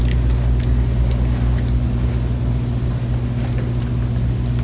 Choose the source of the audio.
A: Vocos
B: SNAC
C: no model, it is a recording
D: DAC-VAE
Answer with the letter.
C